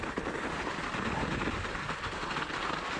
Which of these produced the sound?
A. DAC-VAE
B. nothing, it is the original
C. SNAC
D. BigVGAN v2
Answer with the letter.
B